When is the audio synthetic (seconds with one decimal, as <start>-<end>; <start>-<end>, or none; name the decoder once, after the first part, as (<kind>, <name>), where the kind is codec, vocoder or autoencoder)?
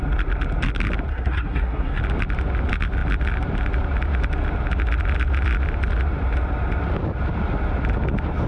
1.1-2.0 (codec, SNAC)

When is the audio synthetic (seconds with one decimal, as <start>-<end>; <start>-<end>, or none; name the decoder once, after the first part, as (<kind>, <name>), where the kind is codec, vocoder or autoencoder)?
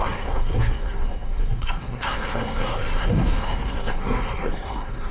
0.0-5.1 (codec, SNAC)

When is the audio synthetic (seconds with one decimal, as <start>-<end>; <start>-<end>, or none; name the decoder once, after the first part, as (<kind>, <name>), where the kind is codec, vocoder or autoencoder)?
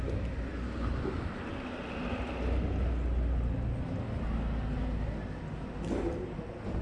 none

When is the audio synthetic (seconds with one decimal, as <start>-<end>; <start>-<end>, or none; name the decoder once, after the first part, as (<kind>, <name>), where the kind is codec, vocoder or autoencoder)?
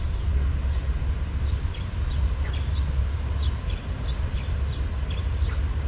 none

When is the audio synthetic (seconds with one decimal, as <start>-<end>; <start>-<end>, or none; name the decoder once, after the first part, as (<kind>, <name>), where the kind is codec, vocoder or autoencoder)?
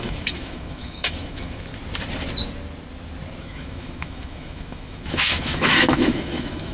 0.0-1.7 (autoencoder, DAC-VAE); 3.4-6.7